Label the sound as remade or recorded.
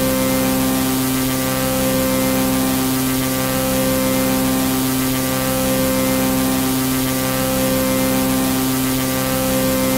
recorded